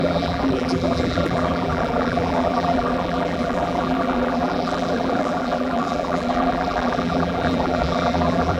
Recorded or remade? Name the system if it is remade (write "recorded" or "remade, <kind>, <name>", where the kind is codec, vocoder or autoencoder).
remade, vocoder, BigVGAN v2